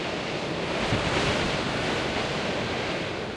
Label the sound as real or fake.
real